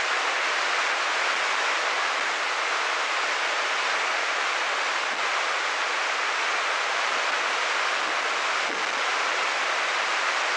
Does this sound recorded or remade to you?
recorded